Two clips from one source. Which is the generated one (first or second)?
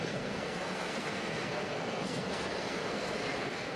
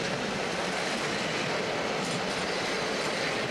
first